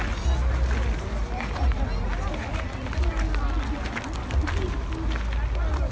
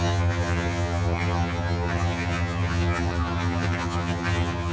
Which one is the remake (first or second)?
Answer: second